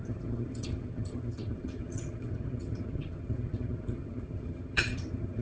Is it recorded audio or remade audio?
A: remade